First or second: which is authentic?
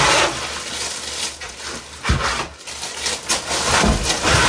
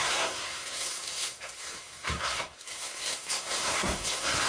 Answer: first